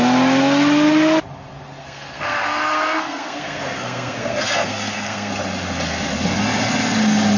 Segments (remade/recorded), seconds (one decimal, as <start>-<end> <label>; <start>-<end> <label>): 0.0-1.8 recorded; 1.8-5.3 remade; 5.3-7.4 recorded